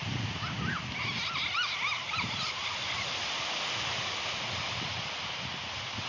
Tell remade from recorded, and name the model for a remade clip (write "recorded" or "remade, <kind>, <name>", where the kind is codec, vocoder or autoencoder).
recorded